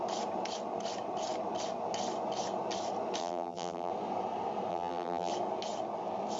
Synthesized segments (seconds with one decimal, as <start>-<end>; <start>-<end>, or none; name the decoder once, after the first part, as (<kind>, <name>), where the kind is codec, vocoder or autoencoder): 3.2-3.9 (vocoder, BigVGAN v2); 4.7-5.3